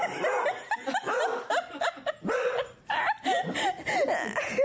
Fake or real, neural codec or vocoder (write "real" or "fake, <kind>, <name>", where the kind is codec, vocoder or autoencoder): real